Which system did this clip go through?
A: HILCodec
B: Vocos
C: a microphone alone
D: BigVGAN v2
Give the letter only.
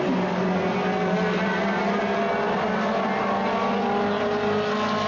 C